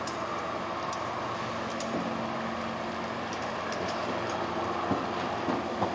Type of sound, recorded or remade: recorded